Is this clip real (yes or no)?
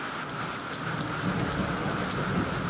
yes